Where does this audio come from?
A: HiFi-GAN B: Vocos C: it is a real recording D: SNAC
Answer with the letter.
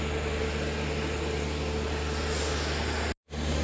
C